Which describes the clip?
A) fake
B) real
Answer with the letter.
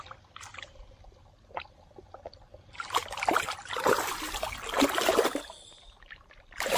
B